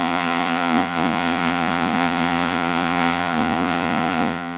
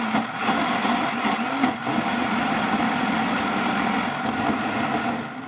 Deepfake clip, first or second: first